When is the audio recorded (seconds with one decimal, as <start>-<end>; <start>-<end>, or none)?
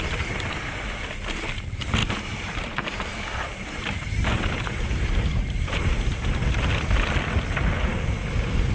0.0-2.0; 6.8-8.7